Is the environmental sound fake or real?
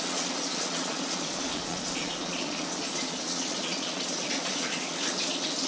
fake